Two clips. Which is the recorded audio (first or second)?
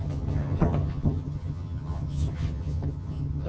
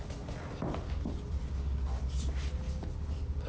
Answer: second